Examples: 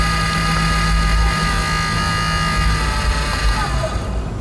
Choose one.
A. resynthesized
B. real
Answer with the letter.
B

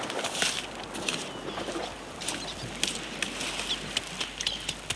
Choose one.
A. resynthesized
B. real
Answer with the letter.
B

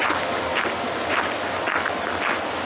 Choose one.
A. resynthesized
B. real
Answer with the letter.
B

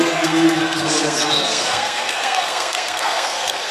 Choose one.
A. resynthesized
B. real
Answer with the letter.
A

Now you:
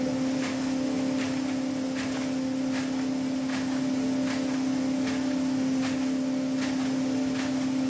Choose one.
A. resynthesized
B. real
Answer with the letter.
B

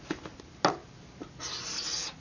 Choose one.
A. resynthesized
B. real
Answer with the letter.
B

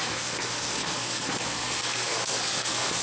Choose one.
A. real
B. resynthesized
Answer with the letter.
B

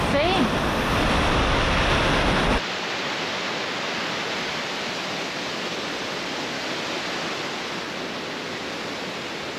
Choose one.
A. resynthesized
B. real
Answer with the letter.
B